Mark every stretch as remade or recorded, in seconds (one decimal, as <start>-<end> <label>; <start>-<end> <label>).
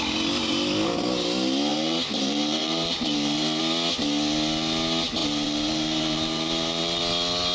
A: 0.0-1.7 recorded; 1.7-3.6 remade; 3.6-5.2 recorded; 5.2-7.0 remade; 7.0-7.5 recorded